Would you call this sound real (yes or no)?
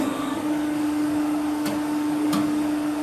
no